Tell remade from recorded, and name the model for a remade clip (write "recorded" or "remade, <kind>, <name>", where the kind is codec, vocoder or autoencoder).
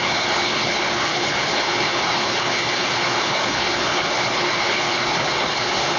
remade, codec, HILCodec